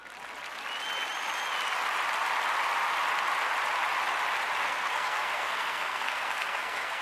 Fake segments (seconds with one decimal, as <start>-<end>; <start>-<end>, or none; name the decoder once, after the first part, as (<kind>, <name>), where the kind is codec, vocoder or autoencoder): 4.6-7.0 (codec, SNAC)